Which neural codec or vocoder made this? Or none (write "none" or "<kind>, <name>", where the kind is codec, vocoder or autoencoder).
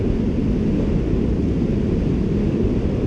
none